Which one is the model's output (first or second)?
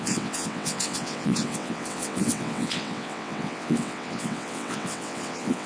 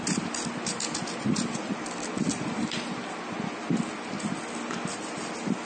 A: first